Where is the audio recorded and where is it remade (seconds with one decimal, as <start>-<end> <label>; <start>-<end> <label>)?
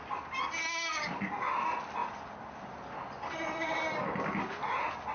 0.0-2.0 recorded; 2.0-3.8 remade; 3.8-5.1 recorded